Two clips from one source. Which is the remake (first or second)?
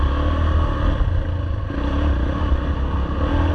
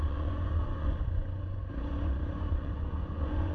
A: second